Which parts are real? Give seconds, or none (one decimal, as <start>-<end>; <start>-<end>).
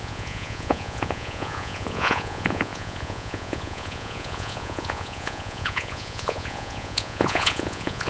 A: none